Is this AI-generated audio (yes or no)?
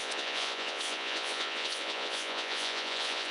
yes